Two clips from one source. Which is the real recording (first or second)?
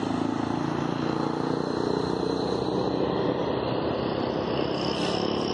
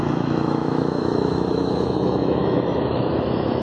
first